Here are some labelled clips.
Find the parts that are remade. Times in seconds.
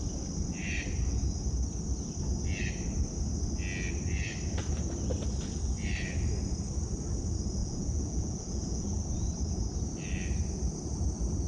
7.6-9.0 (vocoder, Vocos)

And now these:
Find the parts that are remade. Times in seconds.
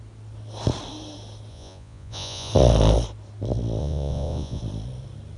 1.5-2.5 (vocoder, Vocos); 3.8-4.6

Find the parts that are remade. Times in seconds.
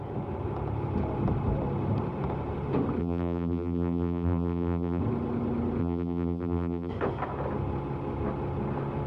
3.0-5.0 (vocoder, BigVGAN v2); 5.8-6.9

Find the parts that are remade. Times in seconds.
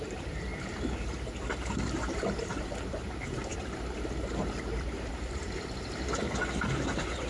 0.0-7.3 (vocoder, BigVGAN v2)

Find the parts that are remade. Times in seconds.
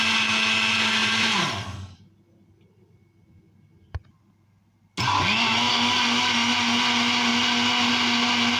1.0-1.5 (vocoder, BigVGAN v2)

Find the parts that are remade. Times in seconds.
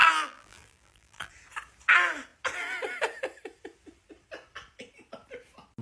0.0-1.3 (vocoder, BigVGAN v2)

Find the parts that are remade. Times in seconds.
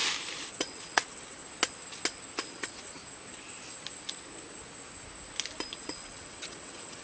0.5-1.4 (vocoder, WaveNeXt); 2.5-3.0; 5.7-7.0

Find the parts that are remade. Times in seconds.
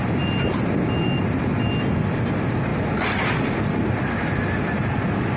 none